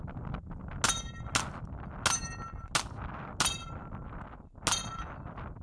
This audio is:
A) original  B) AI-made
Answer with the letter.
A